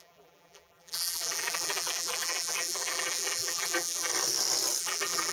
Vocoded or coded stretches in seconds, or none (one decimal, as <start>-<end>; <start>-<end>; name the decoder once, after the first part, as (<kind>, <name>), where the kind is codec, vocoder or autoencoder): 0.0-4.1 (vocoder, BigVGAN v2); 4.8-5.3